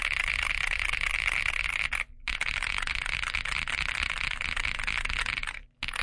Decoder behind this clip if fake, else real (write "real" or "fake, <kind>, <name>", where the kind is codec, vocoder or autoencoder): real